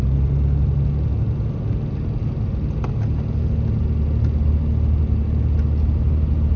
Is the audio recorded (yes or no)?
yes